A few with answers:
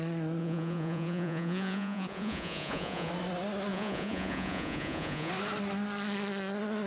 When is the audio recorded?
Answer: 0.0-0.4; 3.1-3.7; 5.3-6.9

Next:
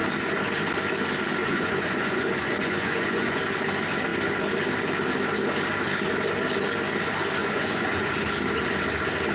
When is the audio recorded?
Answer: 0.0-1.4; 3.4-7.4; 8.1-9.3

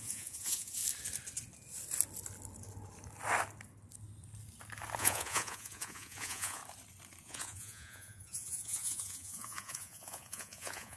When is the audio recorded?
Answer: 0.8-5.0; 6.6-7.2

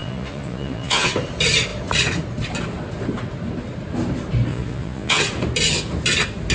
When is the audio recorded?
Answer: 1.1-4.5; 5.2-6.5

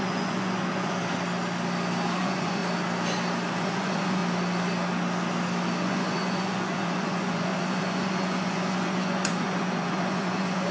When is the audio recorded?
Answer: 1.0-2.2; 2.6-3.5; 4.2-5.8